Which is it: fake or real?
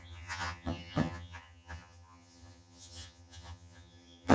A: fake